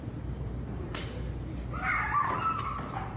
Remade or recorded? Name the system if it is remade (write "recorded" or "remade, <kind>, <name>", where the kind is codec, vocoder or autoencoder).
remade, vocoder, BigVGAN v2